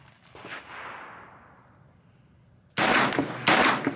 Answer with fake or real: real